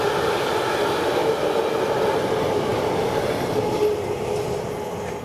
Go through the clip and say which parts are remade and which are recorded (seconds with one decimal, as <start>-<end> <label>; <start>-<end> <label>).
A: 0.0-5.2 recorded